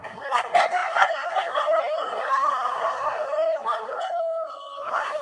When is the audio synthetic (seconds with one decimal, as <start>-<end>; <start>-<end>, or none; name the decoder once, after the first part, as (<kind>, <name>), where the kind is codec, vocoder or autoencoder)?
0.0-5.2 (codec, SNAC)